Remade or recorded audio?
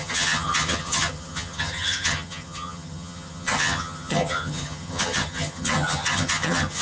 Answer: remade